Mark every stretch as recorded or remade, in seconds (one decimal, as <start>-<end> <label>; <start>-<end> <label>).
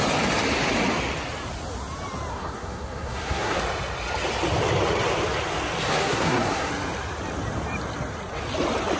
0.0-2.3 recorded; 2.3-3.6 remade; 3.6-5.9 recorded; 5.9-6.7 remade; 6.7-9.0 recorded